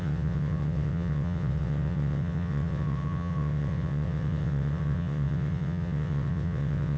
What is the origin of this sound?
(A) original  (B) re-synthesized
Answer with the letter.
B